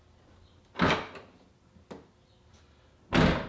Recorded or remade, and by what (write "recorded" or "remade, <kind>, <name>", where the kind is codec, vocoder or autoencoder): recorded